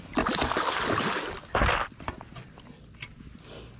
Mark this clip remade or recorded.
recorded